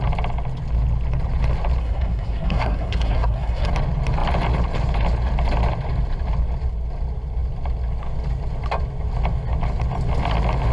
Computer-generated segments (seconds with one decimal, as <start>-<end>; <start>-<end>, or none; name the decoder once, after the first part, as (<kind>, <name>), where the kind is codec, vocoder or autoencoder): 1.8-3.7 (codec, SNAC)